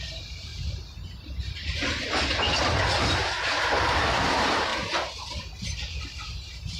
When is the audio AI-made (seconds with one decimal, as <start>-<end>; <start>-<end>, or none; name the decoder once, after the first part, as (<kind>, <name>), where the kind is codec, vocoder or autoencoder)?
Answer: 0.0-0.5 (vocoder, BigVGAN v2); 3.6-4.7; 6.1-6.8